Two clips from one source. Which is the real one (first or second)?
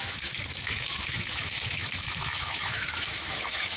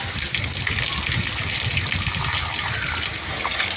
second